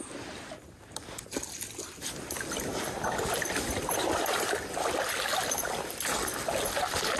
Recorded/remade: recorded